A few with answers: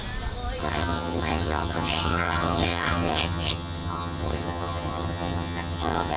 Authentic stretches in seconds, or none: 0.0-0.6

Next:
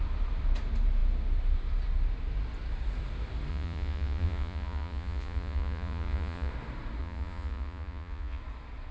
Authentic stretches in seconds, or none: 0.0-3.5; 6.5-7.0; 8.4-8.9

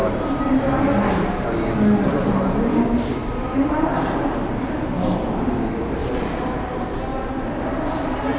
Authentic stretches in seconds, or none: 0.8-3.2; 4.4-6.0; 6.8-8.4

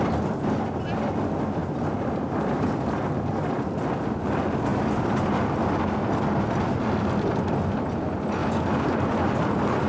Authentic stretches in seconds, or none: 0.0-1.6; 3.4-8.4

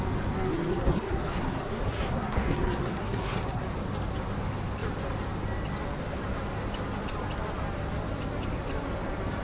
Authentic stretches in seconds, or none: 0.0-0.5; 3.6-9.4

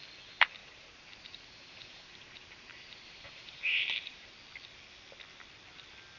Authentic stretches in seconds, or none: 0.0-0.6; 4.3-6.2

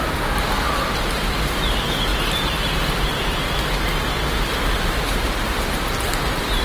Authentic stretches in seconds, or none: 2.1-5.2

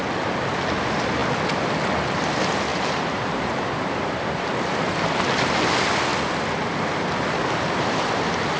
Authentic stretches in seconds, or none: 0.0-2.7; 3.9-8.6